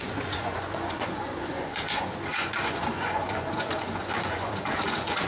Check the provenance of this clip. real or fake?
fake